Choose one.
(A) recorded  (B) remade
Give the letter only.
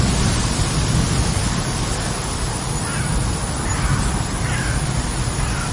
B